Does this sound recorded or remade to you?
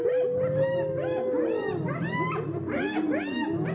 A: recorded